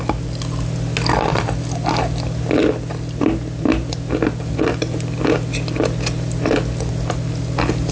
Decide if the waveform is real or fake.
real